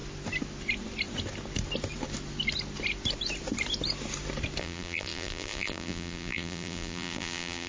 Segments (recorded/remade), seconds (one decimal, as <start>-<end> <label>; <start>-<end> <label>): 0.0-4.6 recorded; 4.6-7.7 remade